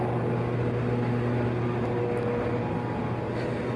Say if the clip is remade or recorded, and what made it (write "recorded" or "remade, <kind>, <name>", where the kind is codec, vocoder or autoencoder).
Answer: recorded